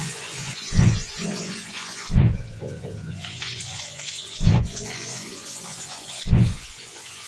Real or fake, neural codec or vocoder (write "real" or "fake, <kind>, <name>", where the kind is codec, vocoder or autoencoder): fake, vocoder, Vocos